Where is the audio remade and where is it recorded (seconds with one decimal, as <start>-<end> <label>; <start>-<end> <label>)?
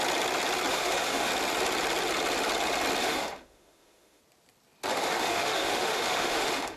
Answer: 0.0-0.7 recorded; 0.7-1.3 remade; 1.3-3.0 recorded; 3.0-4.2 remade; 4.2-4.9 recorded; 4.9-6.8 remade